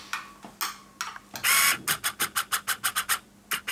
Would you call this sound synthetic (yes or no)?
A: no